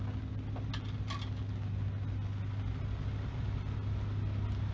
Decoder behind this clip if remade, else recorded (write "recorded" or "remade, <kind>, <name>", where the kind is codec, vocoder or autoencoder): recorded